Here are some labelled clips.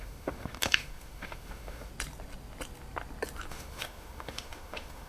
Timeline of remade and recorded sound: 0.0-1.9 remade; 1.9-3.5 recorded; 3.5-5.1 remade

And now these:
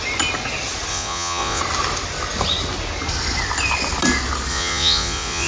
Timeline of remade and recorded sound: 0.0-0.9 recorded; 0.9-1.6 remade; 1.6-4.5 recorded; 4.5-5.5 remade

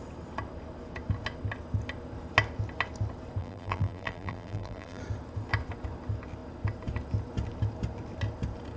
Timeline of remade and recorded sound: 0.0-3.4 recorded; 3.4-5.0 remade; 5.0-8.8 recorded

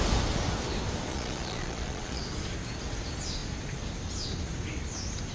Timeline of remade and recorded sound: 0.0-1.1 recorded; 1.1-2.2 remade; 2.2-5.3 recorded

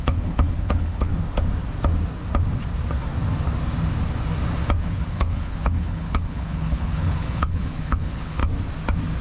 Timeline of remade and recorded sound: 0.0-1.1 remade; 1.1-4.8 recorded; 4.8-8.4 remade; 8.4-9.2 recorded

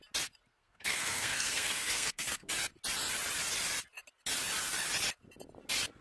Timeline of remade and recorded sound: 0.0-0.5 recorded; 0.5-2.5 remade; 2.5-6.0 recorded

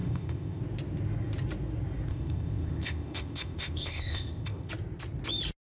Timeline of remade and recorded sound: 0.0-0.6 remade; 0.6-2.1 recorded; 2.1-4.7 remade; 4.7-5.6 recorded

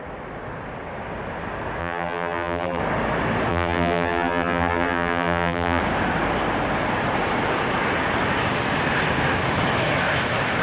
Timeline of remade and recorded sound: 0.0-1.8 recorded; 1.8-2.8 remade; 2.8-3.5 recorded; 3.5-5.8 remade; 5.8-10.6 recorded